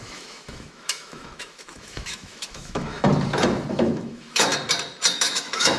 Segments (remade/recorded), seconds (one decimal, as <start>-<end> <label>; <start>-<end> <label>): 0.0-3.1 remade; 3.1-3.7 recorded; 3.7-4.5 remade; 4.5-5.1 recorded; 5.1-5.8 remade